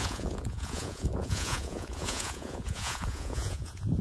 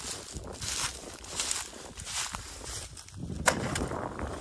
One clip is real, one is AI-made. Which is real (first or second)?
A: second